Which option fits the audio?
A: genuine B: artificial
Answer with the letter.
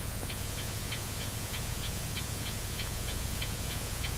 B